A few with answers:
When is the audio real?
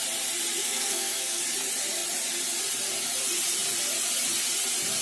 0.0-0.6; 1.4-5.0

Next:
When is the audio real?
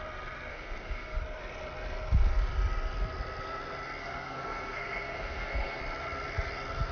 0.0-0.5; 1.2-4.0; 5.8-6.9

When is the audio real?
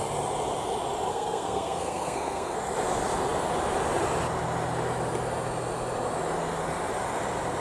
0.0-1.1; 2.6-7.6